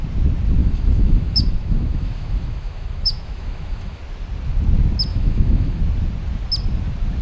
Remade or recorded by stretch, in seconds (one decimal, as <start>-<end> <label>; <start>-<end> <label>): 0.0-0.6 recorded; 0.6-4.0 remade; 4.0-5.1 recorded; 5.1-5.8 remade; 5.8-7.2 recorded